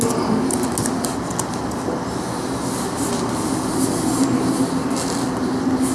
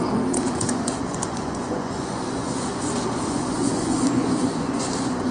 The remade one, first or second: second